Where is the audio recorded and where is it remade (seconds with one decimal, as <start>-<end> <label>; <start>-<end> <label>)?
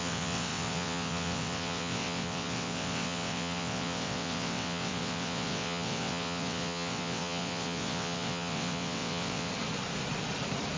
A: 0.0-9.5 remade; 9.5-10.8 recorded